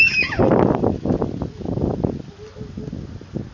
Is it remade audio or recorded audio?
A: recorded